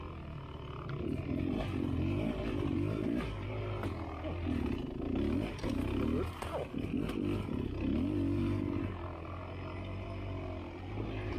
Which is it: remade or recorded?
recorded